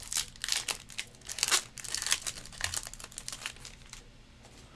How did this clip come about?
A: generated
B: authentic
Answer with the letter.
B